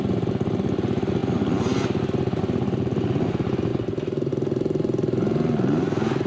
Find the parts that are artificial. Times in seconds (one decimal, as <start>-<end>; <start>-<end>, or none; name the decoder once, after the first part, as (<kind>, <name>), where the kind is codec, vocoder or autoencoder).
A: none